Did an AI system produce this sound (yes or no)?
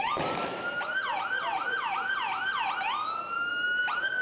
no